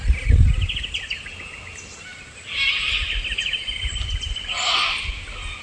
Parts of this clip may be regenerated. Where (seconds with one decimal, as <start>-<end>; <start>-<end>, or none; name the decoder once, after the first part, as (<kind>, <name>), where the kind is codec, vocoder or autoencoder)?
none